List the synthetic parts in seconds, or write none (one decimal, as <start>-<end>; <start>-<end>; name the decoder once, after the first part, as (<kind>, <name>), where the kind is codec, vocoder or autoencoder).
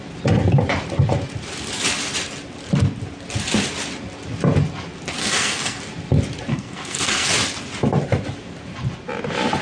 5.2-5.8 (codec, SNAC); 6.5-7.3